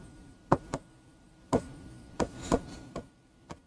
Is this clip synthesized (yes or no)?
yes